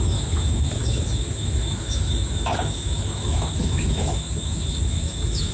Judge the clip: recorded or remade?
remade